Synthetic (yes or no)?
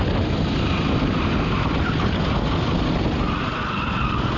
no